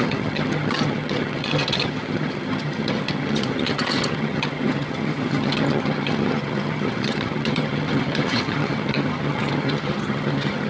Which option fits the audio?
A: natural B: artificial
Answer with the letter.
B